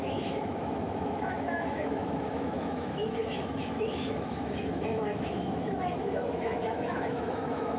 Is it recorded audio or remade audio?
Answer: remade